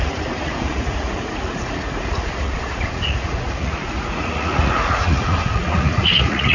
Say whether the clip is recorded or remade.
remade